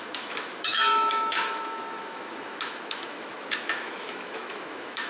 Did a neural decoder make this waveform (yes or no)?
yes